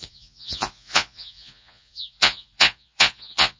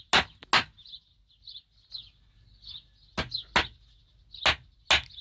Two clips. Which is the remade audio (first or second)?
first